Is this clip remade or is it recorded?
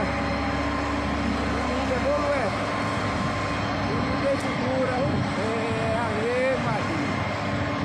recorded